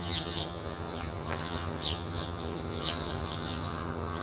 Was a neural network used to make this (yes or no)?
yes